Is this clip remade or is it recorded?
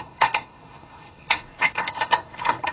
remade